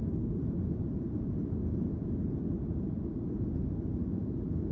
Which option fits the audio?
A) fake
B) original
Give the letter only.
B